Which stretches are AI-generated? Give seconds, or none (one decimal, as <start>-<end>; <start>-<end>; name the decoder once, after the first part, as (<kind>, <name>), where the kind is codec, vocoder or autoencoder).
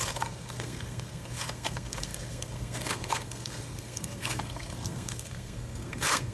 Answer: 0.0-6.3 (codec, SNAC)